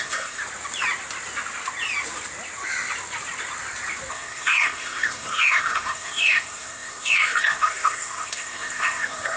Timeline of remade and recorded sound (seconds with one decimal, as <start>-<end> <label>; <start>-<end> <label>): 0.0-0.4 remade; 0.4-4.1 recorded; 4.1-9.4 remade